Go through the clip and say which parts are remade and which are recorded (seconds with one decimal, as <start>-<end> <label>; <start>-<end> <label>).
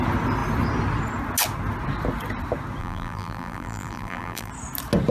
0.0-2.8 recorded; 2.8-4.5 remade; 4.5-5.1 recorded